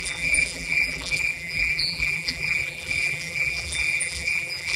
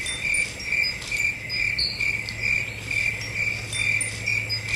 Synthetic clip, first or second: first